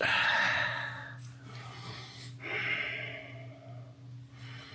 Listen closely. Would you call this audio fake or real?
real